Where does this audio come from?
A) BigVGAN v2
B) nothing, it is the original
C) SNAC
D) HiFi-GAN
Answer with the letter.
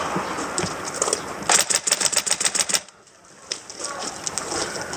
B